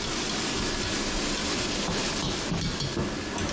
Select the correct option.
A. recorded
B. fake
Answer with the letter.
A